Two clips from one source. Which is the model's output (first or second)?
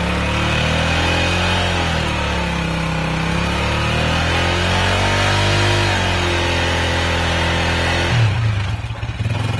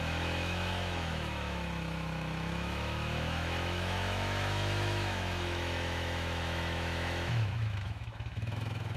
second